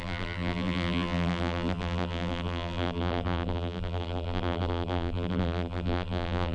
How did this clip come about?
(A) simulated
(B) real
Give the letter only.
A